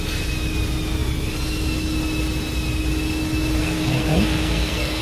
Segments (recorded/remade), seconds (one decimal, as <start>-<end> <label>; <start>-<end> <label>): 0.0-3.6 recorded; 3.6-5.0 remade